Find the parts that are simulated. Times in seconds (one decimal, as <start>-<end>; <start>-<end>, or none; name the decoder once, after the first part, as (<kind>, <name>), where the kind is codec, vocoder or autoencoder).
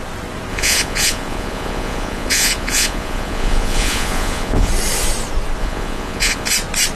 0.5-4.7 (vocoder, Vocos); 5.6-6.5